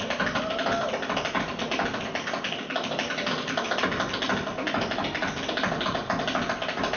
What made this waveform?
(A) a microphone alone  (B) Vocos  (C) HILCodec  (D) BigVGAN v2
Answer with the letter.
A